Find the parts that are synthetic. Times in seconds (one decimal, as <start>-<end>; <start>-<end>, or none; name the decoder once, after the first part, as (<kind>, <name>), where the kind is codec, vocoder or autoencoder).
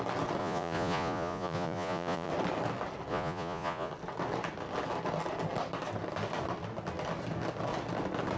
0.4-2.3 (vocoder, Vocos); 3.1-3.9